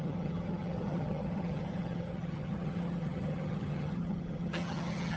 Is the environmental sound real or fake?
fake